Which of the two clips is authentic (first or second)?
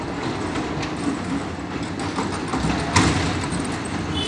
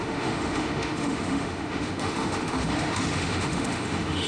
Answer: first